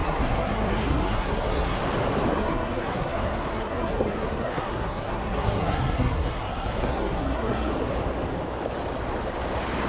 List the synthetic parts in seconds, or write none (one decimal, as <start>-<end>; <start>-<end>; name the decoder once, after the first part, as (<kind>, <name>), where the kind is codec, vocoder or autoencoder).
0.0-1.8 (codec, SNAC); 2.3-7.7